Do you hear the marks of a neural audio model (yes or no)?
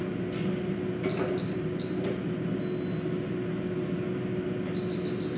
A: no